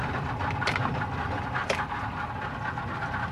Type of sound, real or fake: real